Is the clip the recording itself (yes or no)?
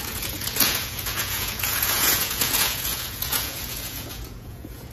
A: no